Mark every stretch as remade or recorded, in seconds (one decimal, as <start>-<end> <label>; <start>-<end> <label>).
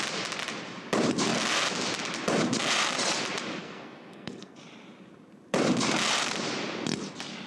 0.0-3.6 recorded; 3.6-4.6 remade; 4.6-7.5 recorded